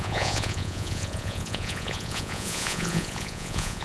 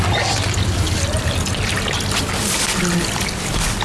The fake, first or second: first